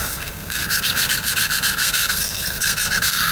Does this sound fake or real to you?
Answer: fake